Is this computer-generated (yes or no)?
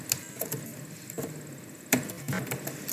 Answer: no